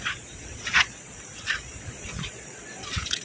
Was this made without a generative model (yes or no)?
no